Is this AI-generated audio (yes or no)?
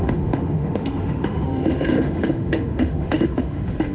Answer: yes